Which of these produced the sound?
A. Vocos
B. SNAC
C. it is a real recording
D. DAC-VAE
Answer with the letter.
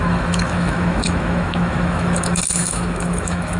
D